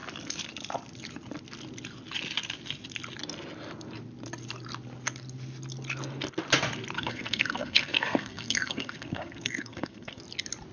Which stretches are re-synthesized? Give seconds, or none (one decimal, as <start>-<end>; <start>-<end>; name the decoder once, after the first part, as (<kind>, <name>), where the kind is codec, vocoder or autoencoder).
7.0-10.2 (codec, SNAC)